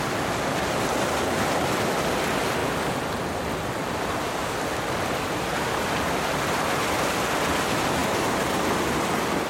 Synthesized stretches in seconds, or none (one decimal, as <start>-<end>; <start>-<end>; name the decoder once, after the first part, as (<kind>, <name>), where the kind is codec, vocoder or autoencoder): none